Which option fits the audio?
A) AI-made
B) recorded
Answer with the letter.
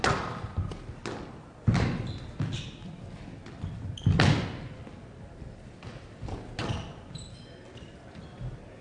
B